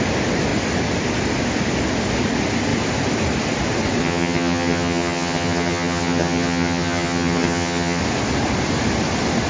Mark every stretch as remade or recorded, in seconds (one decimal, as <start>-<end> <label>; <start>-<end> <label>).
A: 0.0-4.0 recorded; 4.0-8.0 remade; 8.0-9.5 recorded

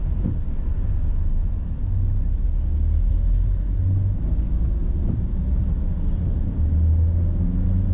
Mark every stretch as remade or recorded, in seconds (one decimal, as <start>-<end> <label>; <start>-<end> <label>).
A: 0.0-7.9 recorded

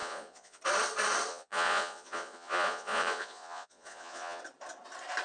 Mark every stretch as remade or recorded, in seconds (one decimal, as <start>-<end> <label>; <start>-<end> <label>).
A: 0.0-0.6 remade; 0.6-1.3 recorded; 1.3-4.4 remade; 4.4-5.2 recorded

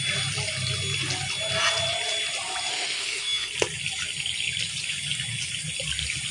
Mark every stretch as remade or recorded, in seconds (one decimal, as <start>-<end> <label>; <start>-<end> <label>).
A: 0.0-2.7 recorded; 2.7-3.5 remade; 3.5-6.3 recorded

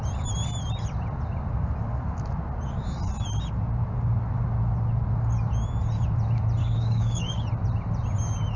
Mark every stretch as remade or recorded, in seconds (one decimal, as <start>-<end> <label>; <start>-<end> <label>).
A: 0.0-6.6 recorded; 6.6-7.4 remade; 7.4-8.6 recorded